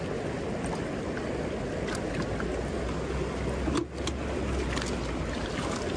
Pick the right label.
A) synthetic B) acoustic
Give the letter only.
B